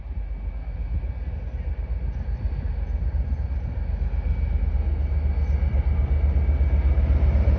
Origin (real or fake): real